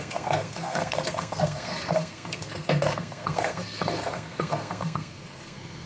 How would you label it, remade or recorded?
remade